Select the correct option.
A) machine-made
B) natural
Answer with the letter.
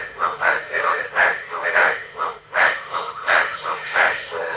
A